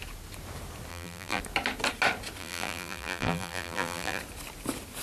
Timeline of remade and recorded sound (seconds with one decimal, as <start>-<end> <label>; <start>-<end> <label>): 0.0-0.9 recorded; 0.9-1.4 remade; 1.4-2.4 recorded; 2.4-4.2 remade; 4.2-5.0 recorded